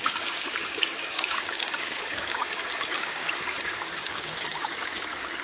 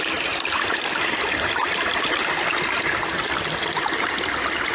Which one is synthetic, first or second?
first